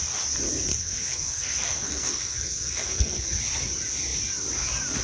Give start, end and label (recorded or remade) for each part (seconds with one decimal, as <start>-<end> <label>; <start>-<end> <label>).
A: 0.0-0.7 recorded; 0.7-3.4 remade; 3.4-5.0 recorded